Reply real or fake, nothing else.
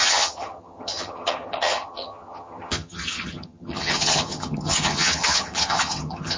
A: fake